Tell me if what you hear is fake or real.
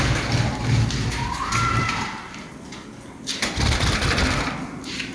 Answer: real